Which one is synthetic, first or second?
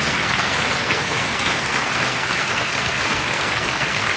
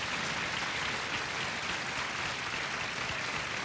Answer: first